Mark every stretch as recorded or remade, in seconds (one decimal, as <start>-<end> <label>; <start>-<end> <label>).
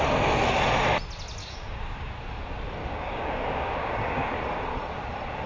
0.0-1.4 recorded; 1.4-2.1 remade; 2.1-2.8 recorded; 2.8-4.3 remade; 4.3-5.5 recorded